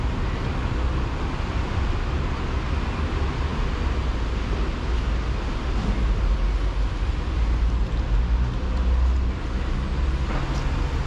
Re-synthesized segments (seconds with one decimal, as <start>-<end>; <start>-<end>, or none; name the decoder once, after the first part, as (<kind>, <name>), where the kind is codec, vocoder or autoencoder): none